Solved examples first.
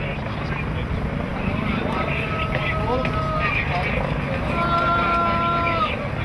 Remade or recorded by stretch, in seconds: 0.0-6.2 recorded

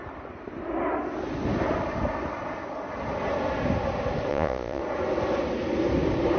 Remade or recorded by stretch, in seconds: 0.0-4.3 recorded; 4.3-4.8 remade; 4.8-6.4 recorded

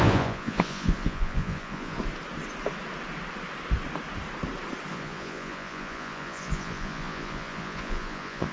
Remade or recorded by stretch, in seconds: 0.0-2.0 remade; 2.0-4.9 recorded; 4.9-8.5 remade

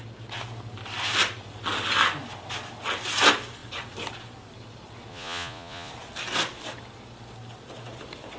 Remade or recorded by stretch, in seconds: 0.0-5.1 recorded; 5.1-5.9 remade; 5.9-8.4 recorded